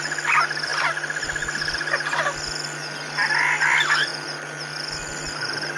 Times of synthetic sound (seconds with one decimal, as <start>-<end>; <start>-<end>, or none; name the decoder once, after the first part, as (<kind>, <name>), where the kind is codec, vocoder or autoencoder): none